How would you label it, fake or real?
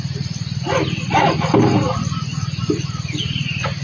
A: real